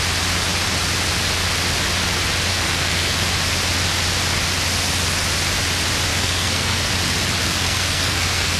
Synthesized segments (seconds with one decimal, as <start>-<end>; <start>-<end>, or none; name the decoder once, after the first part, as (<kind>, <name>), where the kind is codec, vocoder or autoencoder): 2.5-3.3 (codec, SNAC); 6.1-6.9; 7.4-8.6